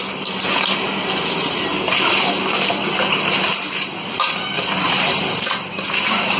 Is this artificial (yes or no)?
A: no